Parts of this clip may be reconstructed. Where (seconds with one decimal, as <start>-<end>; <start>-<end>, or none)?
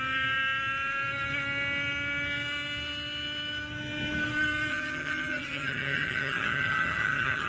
4.7-7.5